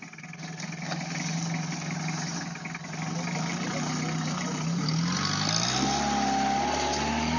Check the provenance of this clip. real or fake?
real